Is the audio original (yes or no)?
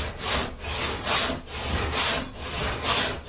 yes